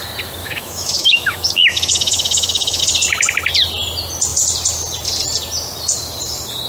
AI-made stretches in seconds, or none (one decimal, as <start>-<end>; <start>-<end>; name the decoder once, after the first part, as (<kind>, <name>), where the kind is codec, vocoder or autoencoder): 0.4-2.8 (autoencoder, DAC-VAE)